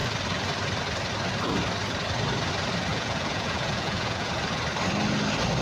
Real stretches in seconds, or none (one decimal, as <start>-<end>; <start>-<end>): 0.0-2.9; 4.3-5.6